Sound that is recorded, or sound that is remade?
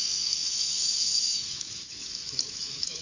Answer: remade